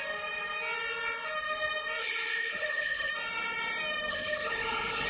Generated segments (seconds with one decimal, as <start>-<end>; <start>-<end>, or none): 2.0-3.1; 4.1-5.1